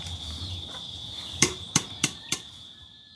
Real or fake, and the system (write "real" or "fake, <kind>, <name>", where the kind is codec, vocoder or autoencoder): fake, vocoder, BigVGAN v2